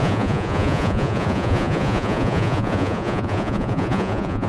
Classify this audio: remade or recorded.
remade